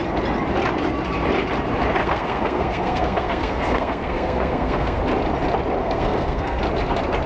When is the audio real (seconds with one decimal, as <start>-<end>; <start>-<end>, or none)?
0.0-2.0; 5.0-5.8; 6.6-7.3